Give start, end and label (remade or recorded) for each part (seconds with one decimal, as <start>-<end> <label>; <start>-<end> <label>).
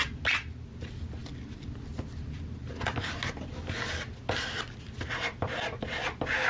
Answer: 0.0-6.5 recorded